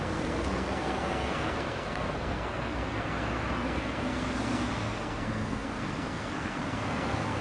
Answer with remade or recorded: remade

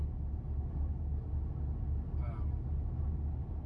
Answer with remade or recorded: recorded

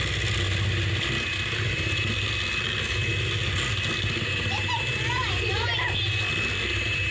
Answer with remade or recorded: recorded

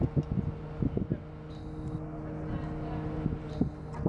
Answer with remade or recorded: recorded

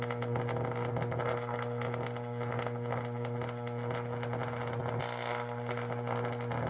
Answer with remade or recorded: recorded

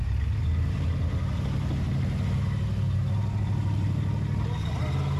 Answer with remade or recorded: recorded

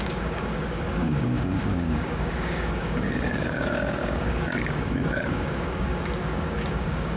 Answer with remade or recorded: remade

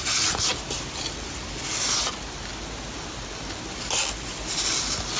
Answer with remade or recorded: recorded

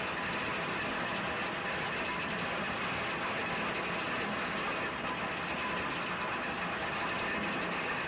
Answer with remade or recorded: recorded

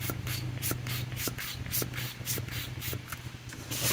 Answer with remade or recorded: recorded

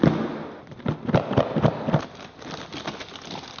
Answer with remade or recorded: recorded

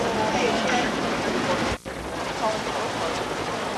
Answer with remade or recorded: remade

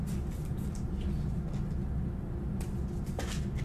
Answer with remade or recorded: recorded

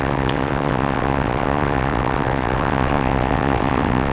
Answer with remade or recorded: remade